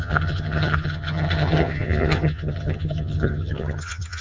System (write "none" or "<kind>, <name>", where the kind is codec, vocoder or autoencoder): vocoder, HiFi-GAN